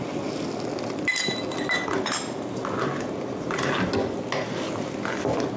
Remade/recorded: recorded